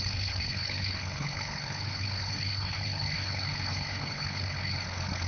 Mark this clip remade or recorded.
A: remade